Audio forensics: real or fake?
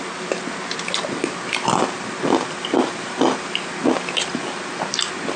real